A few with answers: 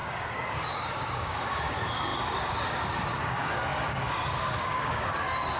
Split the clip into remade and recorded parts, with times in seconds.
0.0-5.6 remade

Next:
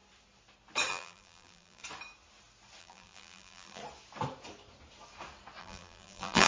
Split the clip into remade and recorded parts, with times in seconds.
0.0-0.9 recorded; 0.9-1.8 remade; 1.8-2.8 recorded; 2.8-3.8 remade; 3.8-5.6 recorded; 5.6-6.5 remade

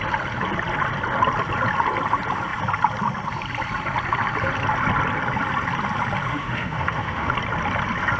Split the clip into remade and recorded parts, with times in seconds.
0.0-6.3 recorded; 6.3-7.3 remade; 7.3-8.2 recorded

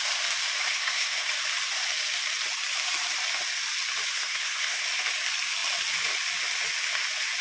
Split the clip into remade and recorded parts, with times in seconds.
0.0-0.6 recorded; 0.6-1.3 remade; 1.3-4.1 recorded; 4.1-4.8 remade; 4.8-7.4 recorded

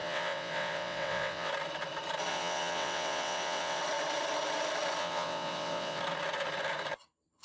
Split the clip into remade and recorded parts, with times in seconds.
0.0-1.5 remade; 1.5-2.3 recorded; 2.3-3.8 remade; 3.8-5.0 recorded; 5.0-6.0 remade; 6.0-7.4 recorded